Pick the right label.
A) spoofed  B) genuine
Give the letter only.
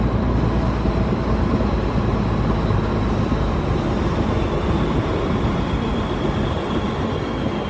B